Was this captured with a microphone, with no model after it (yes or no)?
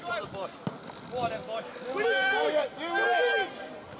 yes